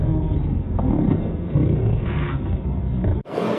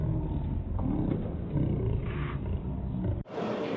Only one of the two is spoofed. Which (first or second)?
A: first